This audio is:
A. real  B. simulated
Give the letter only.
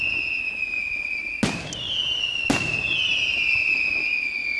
A